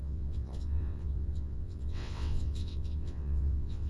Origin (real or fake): fake